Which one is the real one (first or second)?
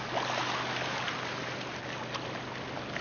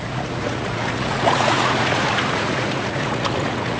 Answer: first